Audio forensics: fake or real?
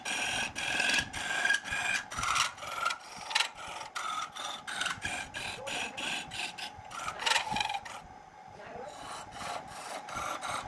real